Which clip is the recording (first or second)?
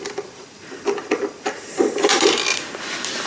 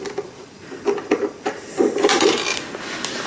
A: second